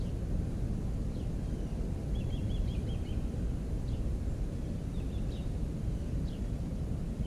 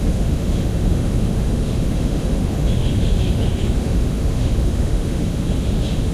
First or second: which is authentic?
first